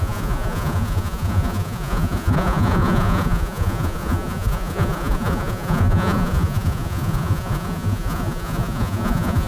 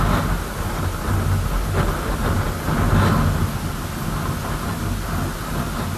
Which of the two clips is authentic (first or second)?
second